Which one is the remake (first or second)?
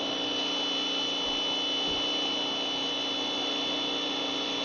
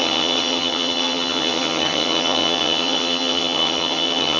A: second